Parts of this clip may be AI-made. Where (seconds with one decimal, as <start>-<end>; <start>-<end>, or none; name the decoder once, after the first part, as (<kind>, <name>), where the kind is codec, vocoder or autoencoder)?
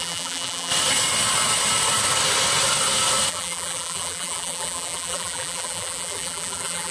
0.0-0.7 (vocoder, BigVGAN v2); 3.3-6.9